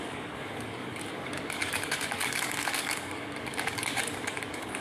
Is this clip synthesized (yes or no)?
yes